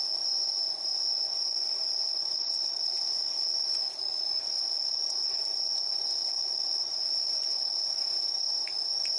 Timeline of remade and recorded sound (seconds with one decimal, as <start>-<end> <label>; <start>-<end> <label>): 0.0-1.1 recorded; 1.1-5.4 remade; 5.4-6.2 recorded; 6.2-7.7 remade; 7.7-9.2 recorded